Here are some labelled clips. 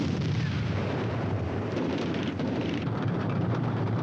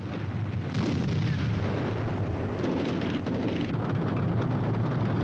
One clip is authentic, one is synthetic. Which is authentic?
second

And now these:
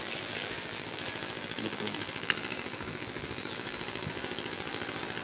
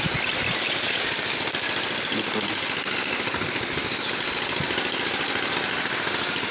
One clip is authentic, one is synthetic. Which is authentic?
second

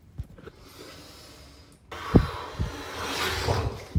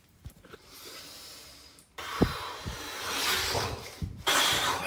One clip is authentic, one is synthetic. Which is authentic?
first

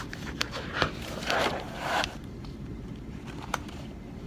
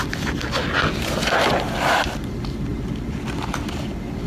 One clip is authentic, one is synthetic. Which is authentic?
second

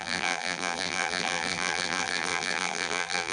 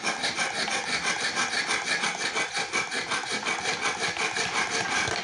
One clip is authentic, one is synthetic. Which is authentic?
second